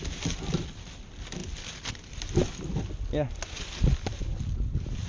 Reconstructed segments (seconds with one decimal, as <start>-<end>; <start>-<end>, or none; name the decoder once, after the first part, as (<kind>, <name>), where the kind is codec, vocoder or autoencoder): none